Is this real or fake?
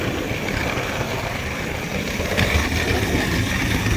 real